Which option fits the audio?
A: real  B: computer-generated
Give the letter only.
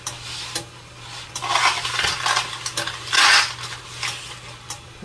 A